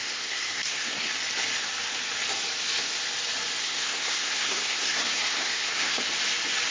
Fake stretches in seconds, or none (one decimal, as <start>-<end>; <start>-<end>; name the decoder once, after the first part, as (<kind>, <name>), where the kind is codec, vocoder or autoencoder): 0.0-1.1 (codec, SNAC); 3.6-6.0

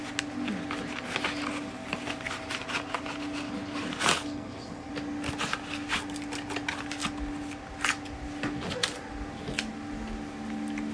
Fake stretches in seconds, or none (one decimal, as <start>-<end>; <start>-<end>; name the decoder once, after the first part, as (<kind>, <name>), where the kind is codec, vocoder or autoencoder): 4.1-4.9 (codec, SNAC)

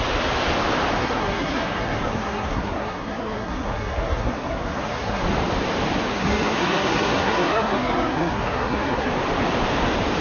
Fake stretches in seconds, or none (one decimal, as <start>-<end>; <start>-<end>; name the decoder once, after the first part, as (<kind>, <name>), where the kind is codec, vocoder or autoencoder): 1.0-5.2 (codec, SNAC); 6.1-9.1